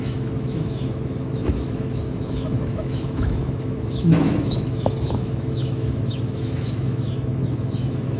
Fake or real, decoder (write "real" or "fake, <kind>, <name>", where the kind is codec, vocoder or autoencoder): fake, autoencoder, DAC-VAE